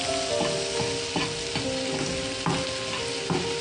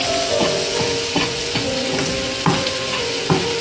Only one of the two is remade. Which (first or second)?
second